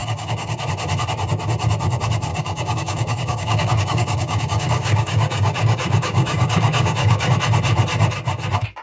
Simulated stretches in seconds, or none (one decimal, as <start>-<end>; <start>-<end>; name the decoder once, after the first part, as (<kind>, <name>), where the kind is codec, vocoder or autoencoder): 0.0-0.6 (codec, DAC); 2.3-7.3